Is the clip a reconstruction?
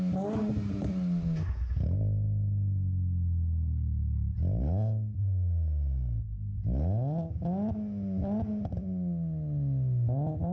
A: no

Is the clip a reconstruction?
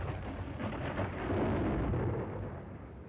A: no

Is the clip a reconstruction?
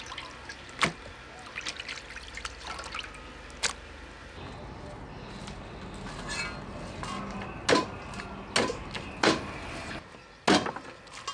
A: no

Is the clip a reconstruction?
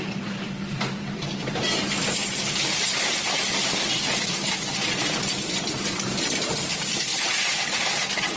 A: no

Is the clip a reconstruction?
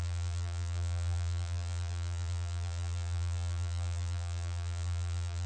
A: yes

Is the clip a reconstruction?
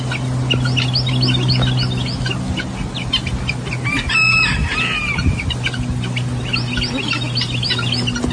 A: no